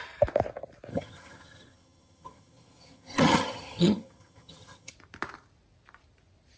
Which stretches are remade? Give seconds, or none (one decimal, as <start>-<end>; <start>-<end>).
0.9-4.9